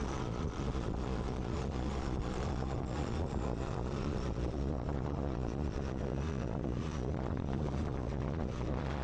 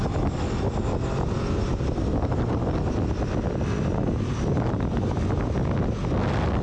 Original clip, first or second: second